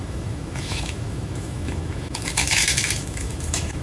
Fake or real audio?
fake